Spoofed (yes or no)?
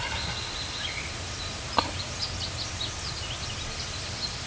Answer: no